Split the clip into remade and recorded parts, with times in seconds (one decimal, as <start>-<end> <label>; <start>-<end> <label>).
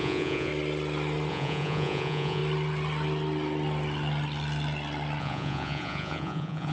0.0-0.5 remade; 0.5-1.3 recorded; 1.3-2.4 remade; 2.4-5.2 recorded; 5.2-6.7 remade